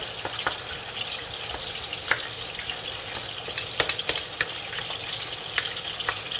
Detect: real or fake real